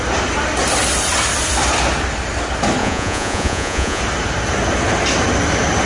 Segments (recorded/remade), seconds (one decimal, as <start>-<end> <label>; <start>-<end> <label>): 0.0-2.8 recorded; 2.8-4.0 remade; 4.0-5.9 recorded